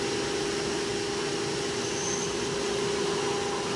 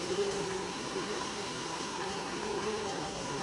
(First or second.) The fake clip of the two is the second